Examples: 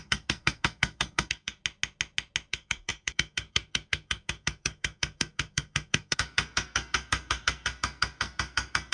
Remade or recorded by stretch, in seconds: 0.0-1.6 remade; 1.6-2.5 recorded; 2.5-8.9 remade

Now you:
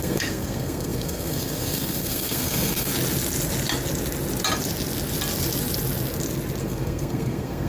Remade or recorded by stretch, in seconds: 0.0-2.9 remade; 2.9-6.6 recorded; 6.6-7.7 remade